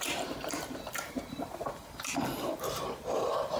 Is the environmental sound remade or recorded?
remade